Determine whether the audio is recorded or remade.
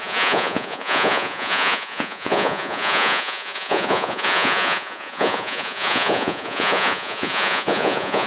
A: remade